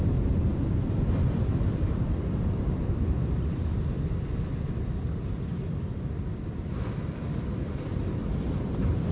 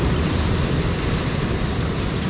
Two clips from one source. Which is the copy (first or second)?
second